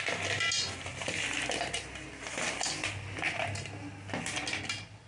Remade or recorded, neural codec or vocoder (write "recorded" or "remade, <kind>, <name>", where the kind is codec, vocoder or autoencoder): recorded